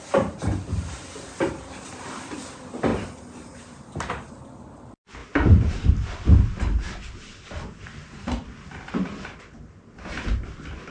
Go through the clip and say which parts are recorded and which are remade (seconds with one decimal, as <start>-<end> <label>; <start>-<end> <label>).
0.0-10.9 remade